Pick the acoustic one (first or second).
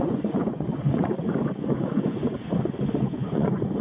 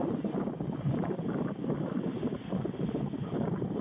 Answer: second